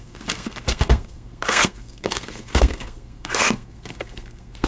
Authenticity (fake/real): fake